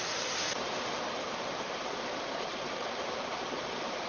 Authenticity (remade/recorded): remade